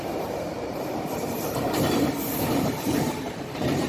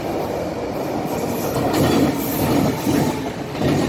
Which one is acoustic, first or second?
second